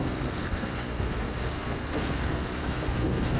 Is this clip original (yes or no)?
no